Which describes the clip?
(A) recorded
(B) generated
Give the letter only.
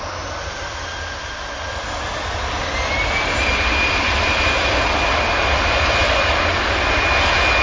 A